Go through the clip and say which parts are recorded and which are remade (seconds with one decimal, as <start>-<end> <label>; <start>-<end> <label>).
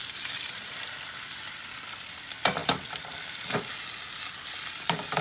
0.0-0.8 remade; 0.8-2.6 recorded; 2.6-3.2 remade; 3.2-5.2 recorded